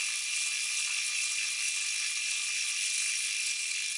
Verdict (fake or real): real